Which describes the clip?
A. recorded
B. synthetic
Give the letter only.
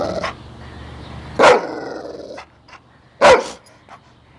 A